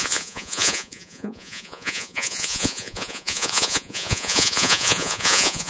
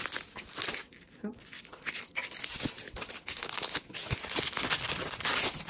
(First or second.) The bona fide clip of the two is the second